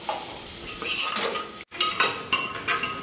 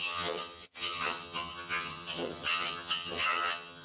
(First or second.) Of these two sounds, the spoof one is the second